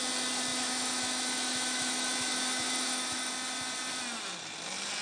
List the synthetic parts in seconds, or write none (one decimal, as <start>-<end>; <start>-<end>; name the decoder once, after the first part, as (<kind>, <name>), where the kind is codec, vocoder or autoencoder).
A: 0.5-3.3 (autoencoder, DAC-VAE)